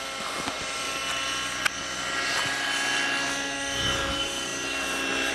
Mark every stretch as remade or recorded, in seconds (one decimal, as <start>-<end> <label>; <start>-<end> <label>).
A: 0.0-5.3 recorded

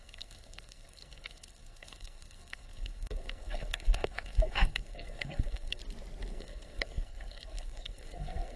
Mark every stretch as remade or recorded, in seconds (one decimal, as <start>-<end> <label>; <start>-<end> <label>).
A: 0.0-5.8 remade; 5.8-6.3 recorded; 6.3-8.6 remade

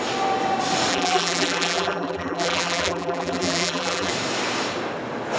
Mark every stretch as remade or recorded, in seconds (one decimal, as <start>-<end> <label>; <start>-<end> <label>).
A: 0.0-0.9 recorded; 0.9-4.1 remade; 4.1-5.4 recorded

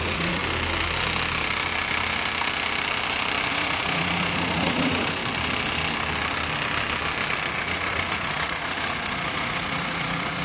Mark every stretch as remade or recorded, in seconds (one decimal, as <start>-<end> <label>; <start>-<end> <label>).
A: 0.0-0.4 remade; 0.4-3.5 recorded; 3.5-5.2 remade; 5.2-7.6 recorded; 7.6-10.4 remade

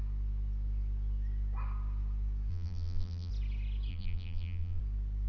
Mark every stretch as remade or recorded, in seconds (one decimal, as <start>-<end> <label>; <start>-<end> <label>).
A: 0.0-2.5 recorded; 2.5-3.3 remade; 3.3-3.9 recorded; 3.9-4.8 remade; 4.8-5.3 recorded